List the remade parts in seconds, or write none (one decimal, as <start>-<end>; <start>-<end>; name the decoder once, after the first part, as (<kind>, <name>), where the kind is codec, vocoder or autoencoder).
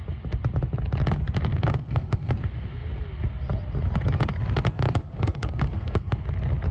1.5-2.3 (codec, SNAC); 5.0-6.2